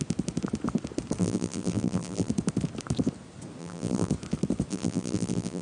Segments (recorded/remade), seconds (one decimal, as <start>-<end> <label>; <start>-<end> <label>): 0.0-1.2 recorded; 1.2-2.3 remade; 2.3-3.6 recorded; 3.6-4.1 remade; 4.1-4.7 recorded; 4.7-5.6 remade

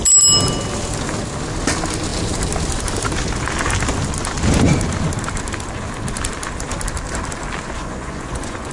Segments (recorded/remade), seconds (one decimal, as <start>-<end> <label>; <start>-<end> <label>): 0.0-7.8 recorded; 7.8-8.7 remade